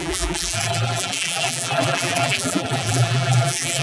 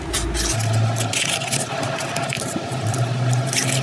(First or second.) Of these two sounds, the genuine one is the second